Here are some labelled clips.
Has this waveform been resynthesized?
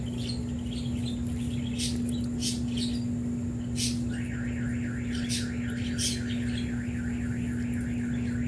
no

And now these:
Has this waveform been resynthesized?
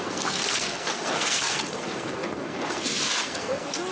yes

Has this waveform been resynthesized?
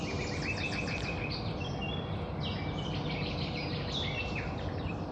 no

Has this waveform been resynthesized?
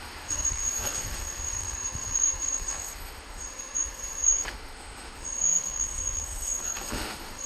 yes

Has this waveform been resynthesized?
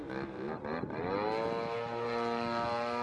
no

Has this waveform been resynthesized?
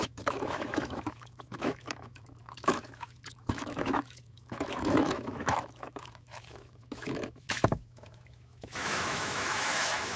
yes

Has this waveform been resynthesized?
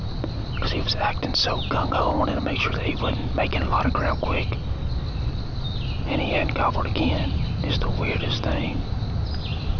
no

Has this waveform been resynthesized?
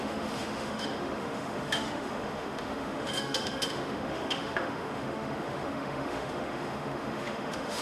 yes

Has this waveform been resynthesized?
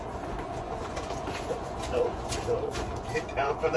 yes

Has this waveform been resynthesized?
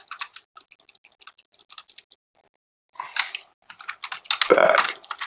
no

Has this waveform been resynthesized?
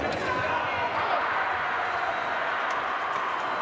yes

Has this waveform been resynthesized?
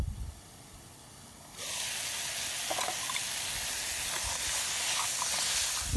no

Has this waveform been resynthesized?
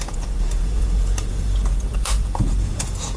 yes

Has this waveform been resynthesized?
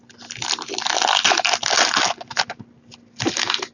no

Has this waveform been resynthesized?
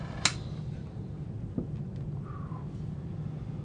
no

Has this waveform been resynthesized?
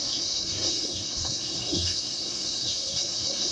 yes